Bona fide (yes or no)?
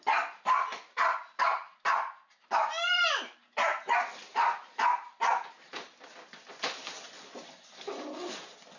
yes